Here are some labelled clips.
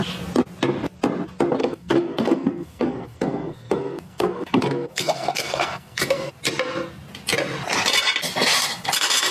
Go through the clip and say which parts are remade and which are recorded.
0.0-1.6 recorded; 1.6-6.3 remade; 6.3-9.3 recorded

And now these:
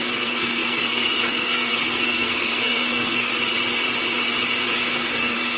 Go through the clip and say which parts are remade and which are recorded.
0.0-3.3 remade; 3.3-4.7 recorded; 4.7-5.6 remade